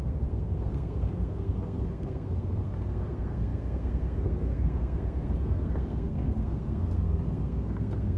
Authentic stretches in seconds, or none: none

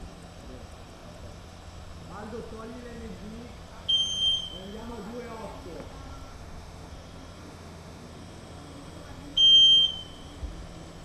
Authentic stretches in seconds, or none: 0.0-6.3; 6.9-7.4; 8.1-11.0

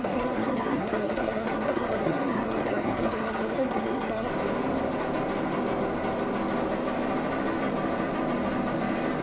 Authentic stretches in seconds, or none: 4.3-9.2

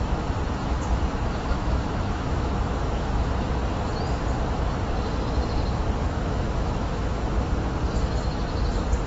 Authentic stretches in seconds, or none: 0.0-0.6; 3.3-6.0; 7.4-9.1

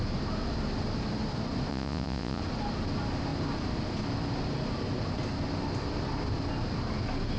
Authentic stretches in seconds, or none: 0.0-1.7; 2.4-7.4

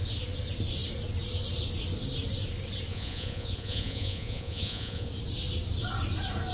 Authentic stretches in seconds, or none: 0.0-2.9; 5.1-6.5

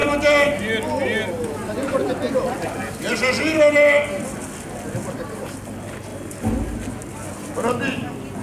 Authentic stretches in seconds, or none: 0.0-2.0; 4.4-8.4